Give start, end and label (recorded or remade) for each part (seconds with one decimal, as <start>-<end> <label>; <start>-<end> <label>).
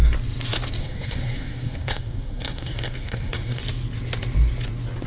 0.0-0.8 recorded; 0.8-3.6 remade; 3.6-5.1 recorded